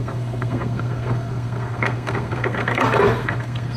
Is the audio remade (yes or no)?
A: yes